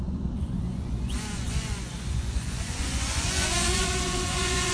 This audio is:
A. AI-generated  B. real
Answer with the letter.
A